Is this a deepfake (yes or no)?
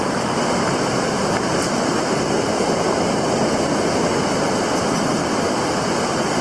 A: no